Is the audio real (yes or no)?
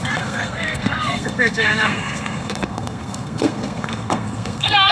no